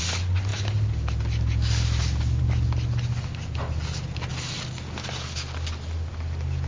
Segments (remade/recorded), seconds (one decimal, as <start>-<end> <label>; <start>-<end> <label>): 0.0-6.7 recorded